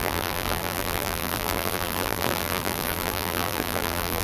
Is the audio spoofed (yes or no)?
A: yes